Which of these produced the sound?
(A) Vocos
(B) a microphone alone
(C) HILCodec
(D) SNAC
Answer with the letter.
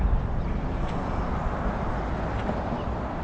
B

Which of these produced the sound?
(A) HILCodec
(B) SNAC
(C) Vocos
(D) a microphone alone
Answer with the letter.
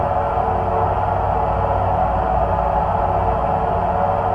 D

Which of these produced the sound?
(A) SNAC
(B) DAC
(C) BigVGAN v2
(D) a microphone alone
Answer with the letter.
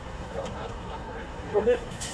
A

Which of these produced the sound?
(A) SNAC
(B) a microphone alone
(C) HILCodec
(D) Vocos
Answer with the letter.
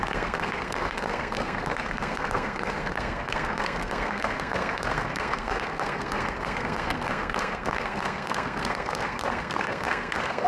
A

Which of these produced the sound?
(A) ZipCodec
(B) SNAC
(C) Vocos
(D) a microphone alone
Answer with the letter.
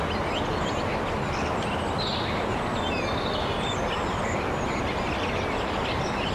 D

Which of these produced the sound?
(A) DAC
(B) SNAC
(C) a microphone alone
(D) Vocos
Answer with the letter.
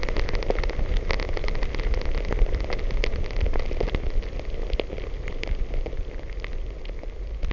C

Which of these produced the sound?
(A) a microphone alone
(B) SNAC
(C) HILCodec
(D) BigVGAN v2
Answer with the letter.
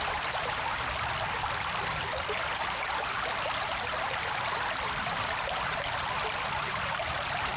A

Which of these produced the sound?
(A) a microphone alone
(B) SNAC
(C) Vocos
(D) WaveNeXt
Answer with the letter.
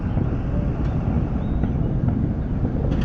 A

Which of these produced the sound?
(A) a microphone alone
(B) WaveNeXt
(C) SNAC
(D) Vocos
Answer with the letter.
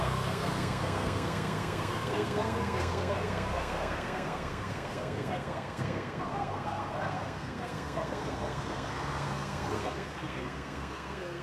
C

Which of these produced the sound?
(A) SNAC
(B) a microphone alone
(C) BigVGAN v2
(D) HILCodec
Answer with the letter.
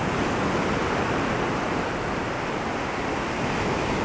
B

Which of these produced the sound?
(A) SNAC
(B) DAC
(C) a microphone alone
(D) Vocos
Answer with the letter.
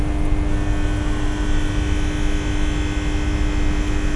C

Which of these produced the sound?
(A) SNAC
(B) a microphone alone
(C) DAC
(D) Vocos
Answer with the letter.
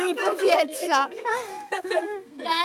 A